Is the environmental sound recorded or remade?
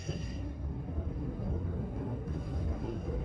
remade